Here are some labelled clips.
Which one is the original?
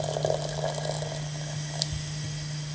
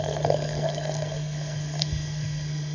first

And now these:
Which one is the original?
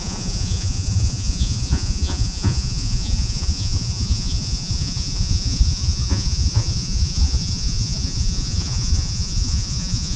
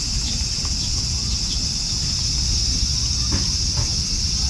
second